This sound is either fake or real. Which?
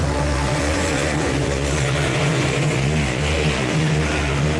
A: fake